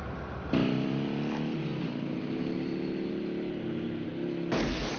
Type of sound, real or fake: real